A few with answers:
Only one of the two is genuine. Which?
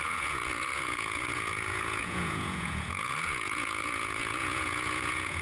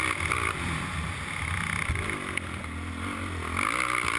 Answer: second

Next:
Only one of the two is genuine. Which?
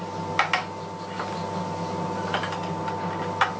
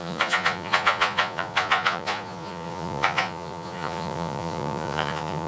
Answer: first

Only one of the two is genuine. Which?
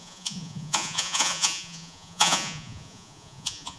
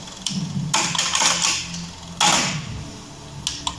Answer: second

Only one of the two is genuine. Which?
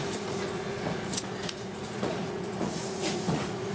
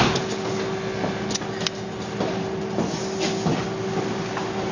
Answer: second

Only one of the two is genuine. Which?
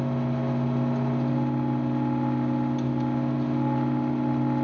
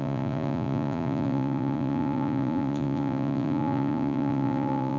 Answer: first